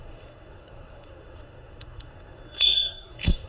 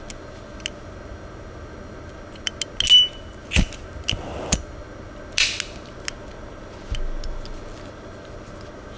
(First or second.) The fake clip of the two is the first